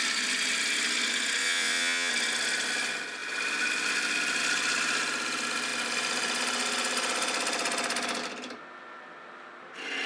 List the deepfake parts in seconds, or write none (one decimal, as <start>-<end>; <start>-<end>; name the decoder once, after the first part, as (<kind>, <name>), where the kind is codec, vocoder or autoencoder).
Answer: 1.4-2.1 (vocoder, WaveNeXt)